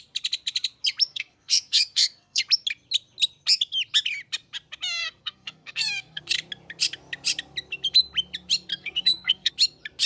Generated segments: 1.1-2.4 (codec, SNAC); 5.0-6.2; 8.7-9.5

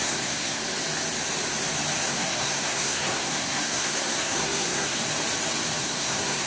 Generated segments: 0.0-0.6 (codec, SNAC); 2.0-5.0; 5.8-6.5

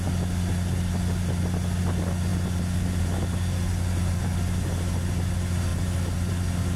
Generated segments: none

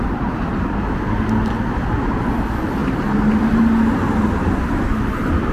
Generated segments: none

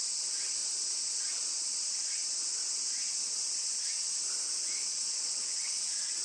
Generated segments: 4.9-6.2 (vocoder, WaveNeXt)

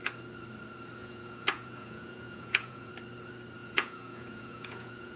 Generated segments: 1.0-2.9 (vocoder, Vocos); 3.6-5.2

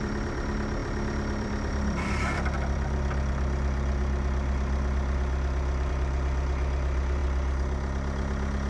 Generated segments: 0.0-7.2 (vocoder, BigVGAN v2)